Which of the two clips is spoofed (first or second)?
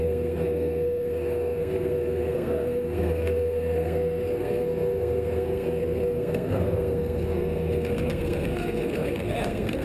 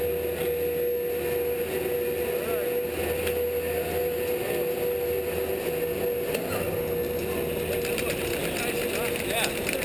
first